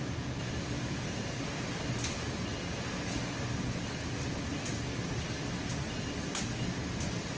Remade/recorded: recorded